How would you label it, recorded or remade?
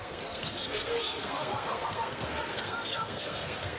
remade